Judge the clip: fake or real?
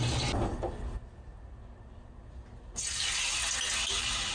real